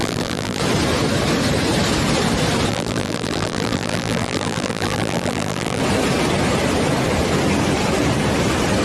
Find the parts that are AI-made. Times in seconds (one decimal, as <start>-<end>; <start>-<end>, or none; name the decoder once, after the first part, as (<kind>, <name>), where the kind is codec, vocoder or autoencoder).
0.0-0.6 (vocoder, BigVGAN v2); 2.7-5.8